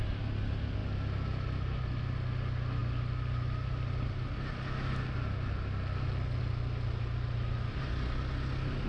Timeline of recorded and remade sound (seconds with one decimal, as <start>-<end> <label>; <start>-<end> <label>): 0.0-8.9 recorded